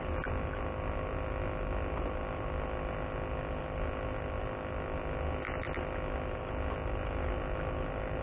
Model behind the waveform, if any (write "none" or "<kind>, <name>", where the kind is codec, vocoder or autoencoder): none